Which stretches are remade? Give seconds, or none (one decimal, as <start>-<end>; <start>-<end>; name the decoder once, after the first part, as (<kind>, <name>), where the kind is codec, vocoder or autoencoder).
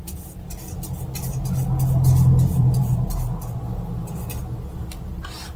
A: none